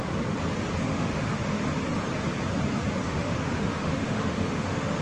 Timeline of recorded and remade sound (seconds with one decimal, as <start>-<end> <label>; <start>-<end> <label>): 0.0-0.9 recorded; 0.9-1.6 remade; 1.6-3.0 recorded; 3.0-5.0 remade